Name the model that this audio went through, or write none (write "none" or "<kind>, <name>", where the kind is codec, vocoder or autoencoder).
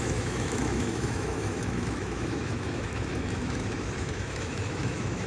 autoencoder, DAC-VAE